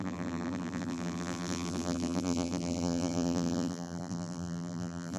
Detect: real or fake fake